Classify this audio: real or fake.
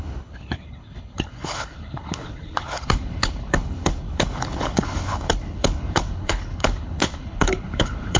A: fake